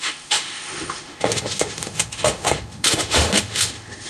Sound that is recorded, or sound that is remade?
remade